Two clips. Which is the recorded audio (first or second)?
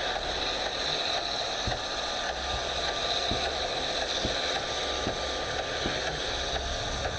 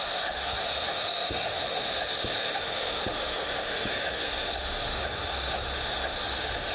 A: first